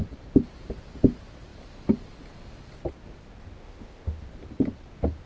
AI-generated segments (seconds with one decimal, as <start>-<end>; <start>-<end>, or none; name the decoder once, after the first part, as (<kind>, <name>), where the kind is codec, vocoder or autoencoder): 3.6-4.2 (autoencoder, DAC-VAE)